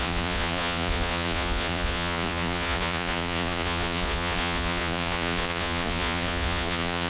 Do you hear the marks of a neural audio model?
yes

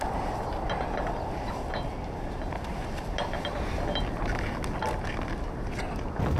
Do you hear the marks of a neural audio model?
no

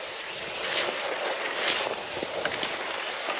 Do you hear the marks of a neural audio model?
no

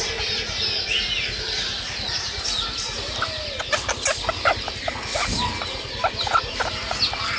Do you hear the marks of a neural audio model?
no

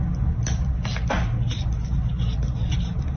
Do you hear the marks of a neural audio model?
no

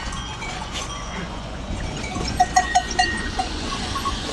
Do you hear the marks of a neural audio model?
yes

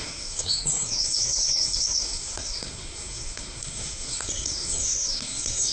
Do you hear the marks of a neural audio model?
yes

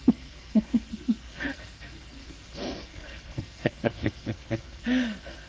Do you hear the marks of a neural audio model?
yes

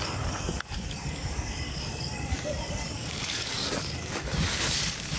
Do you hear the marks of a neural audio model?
yes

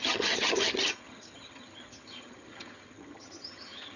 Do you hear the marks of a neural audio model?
yes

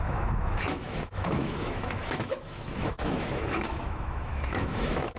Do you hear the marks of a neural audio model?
yes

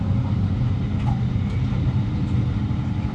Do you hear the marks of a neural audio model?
no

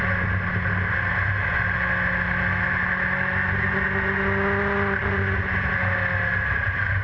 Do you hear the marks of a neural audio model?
no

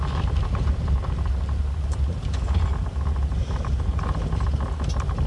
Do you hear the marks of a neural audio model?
no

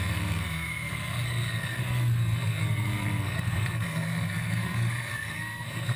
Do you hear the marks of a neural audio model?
yes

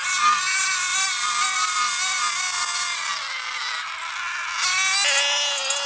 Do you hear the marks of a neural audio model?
no